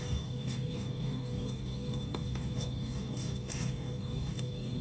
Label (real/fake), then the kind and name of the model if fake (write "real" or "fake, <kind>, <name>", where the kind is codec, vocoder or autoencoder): fake, codec, DAC